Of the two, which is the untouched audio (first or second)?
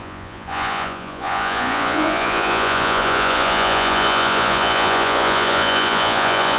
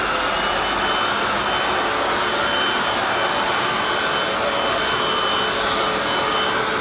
second